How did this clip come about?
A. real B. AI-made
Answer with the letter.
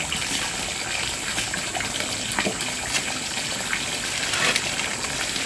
A